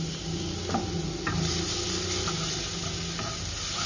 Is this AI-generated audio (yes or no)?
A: no